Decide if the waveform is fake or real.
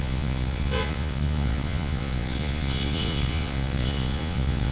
fake